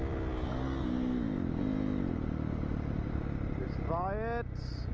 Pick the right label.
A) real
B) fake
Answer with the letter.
A